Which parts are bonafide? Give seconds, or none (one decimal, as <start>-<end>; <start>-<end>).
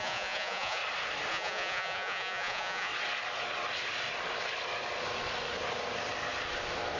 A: 0.8-1.3; 2.9-7.0